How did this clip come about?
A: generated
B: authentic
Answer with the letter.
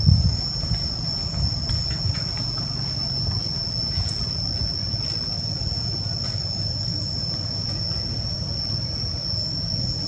B